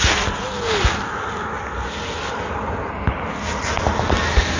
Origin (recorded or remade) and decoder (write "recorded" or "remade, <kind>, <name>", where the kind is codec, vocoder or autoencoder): recorded